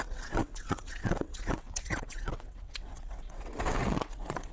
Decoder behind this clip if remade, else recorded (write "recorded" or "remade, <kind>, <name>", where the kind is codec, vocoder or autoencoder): remade, vocoder, WaveNeXt